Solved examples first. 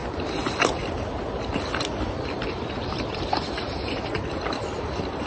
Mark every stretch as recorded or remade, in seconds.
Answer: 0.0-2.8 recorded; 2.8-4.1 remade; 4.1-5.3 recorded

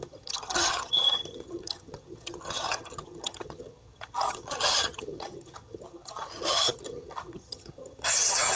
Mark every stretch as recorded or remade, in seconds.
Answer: 0.0-8.6 remade

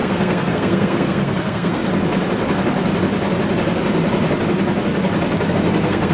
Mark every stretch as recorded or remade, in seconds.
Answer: 0.0-1.8 remade; 1.8-5.5 recorded; 5.5-6.1 remade

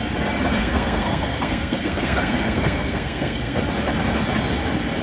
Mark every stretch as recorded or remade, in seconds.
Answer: 0.0-0.6 recorded; 0.6-3.6 remade; 3.6-5.0 recorded

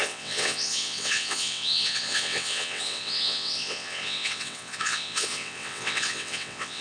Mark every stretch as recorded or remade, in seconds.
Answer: 0.0-6.8 remade

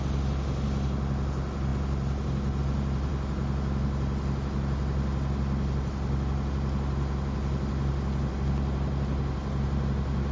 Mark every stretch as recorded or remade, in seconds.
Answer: 0.0-10.3 recorded

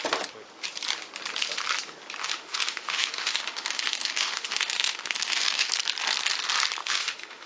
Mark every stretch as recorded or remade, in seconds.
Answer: 0.0-2.2 recorded; 2.2-5.7 remade; 5.7-6.8 recorded; 6.8-7.5 remade

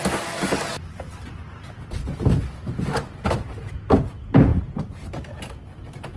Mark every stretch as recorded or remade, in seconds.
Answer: 0.0-4.5 recorded; 4.5-5.4 remade; 5.4-6.2 recorded